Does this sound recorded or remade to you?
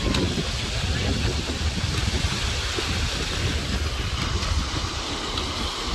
recorded